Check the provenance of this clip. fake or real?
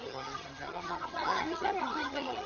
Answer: fake